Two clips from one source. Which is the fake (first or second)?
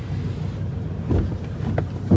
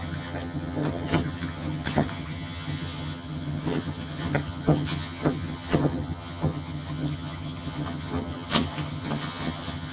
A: second